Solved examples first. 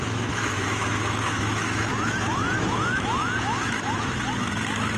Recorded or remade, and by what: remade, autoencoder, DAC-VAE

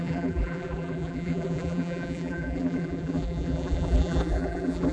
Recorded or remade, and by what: remade, vocoder, BigVGAN v2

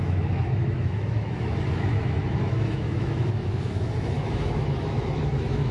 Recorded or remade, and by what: remade, autoencoder, DAC-VAE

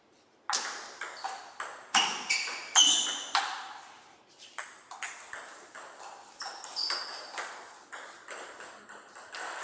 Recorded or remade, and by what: recorded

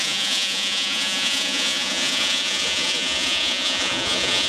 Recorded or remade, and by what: remade, vocoder, Vocos